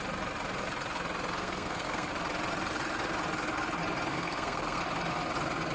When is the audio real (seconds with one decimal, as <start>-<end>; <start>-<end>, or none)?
0.0-1.4; 2.1-4.1; 4.8-5.7